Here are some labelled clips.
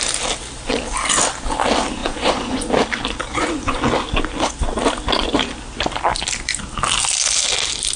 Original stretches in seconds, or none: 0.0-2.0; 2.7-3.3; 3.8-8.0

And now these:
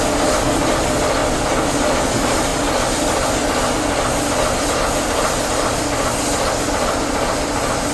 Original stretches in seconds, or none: 0.0-7.9